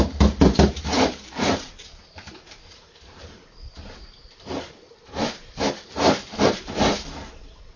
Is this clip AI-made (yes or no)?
yes